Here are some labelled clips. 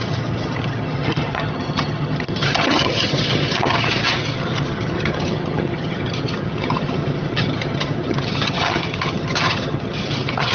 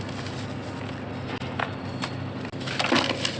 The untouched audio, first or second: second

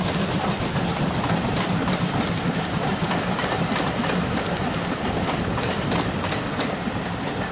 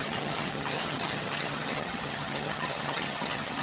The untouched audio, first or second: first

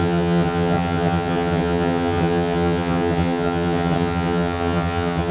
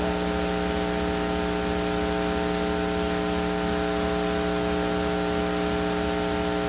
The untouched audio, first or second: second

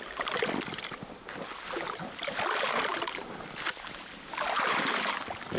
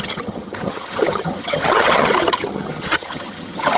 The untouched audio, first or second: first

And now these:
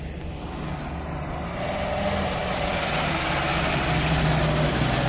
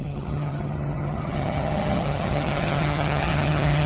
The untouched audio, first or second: first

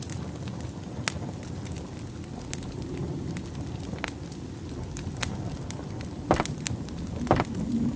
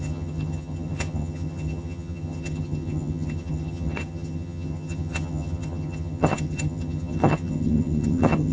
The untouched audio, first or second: first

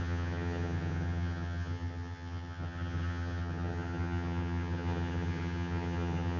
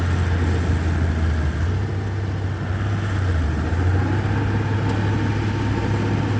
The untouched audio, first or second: second